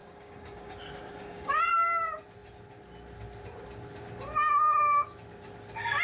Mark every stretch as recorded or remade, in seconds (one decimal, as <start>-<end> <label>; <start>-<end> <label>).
0.0-1.6 remade; 1.6-6.0 recorded